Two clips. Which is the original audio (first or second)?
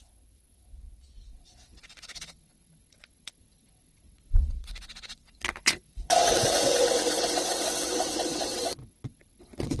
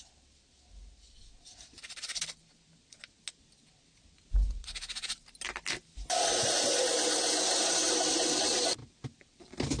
second